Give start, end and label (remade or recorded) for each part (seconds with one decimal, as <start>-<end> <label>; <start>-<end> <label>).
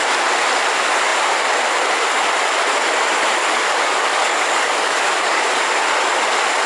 0.0-3.4 recorded; 3.4-5.4 remade; 5.4-6.7 recorded